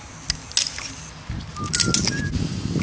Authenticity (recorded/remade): recorded